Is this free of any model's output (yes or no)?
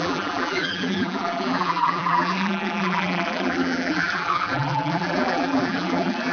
no